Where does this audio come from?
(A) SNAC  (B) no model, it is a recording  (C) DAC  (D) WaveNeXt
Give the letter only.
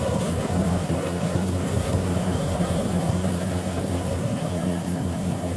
A